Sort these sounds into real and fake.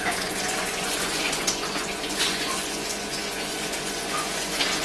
fake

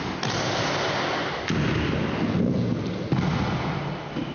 real